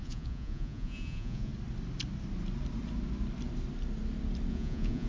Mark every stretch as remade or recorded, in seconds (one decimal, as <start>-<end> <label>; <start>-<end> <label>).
0.0-1.5 remade; 1.5-4.5 recorded; 4.5-5.1 remade